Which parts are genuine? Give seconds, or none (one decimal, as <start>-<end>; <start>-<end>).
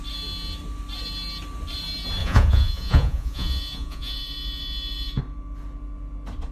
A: 0.0-2.2; 5.2-6.5